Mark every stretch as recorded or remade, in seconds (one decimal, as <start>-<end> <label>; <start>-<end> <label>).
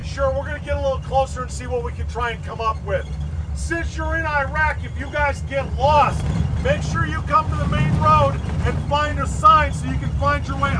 0.0-10.8 recorded